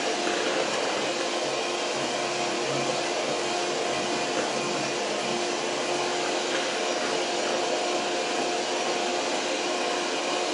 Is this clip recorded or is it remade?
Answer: recorded